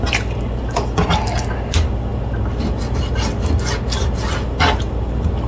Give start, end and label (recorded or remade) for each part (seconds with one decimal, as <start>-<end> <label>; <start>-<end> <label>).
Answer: 0.0-5.5 recorded